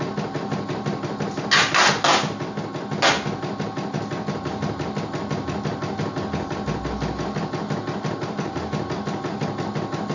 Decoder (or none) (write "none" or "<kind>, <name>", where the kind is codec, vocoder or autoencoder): none